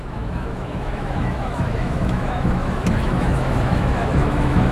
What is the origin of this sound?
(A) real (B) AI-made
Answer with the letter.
B